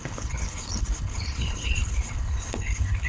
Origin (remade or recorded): remade